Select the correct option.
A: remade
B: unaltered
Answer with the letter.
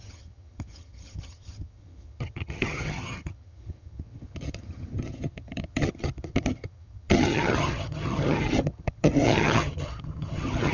A